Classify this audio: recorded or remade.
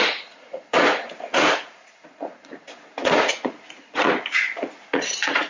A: remade